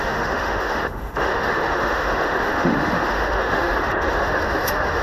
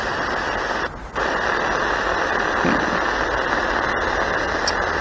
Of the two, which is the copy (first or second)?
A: first